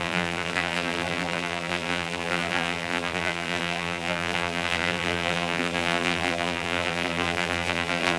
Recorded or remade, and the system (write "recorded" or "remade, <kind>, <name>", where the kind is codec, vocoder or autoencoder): remade, vocoder, BigVGAN v2